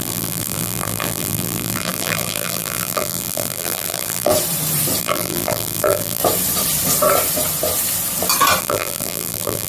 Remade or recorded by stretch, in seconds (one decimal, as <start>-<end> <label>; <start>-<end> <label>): 0.0-4.3 remade; 4.3-5.0 recorded; 5.0-6.2 remade; 6.2-8.6 recorded; 8.6-9.7 remade